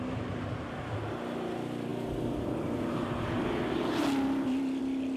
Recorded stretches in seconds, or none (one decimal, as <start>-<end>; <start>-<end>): 0.0-5.2